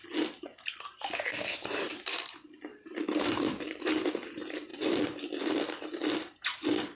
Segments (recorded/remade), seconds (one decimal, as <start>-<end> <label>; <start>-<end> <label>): 0.0-2.7 recorded; 2.7-4.0 remade; 4.0-4.7 recorded; 4.7-5.3 remade; 5.3-7.0 recorded